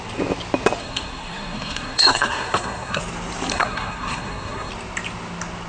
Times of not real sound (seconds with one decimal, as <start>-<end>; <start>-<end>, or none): 0.8-3.0; 3.5-4.7